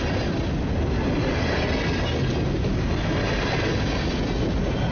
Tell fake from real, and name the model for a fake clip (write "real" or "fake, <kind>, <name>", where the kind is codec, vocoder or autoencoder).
real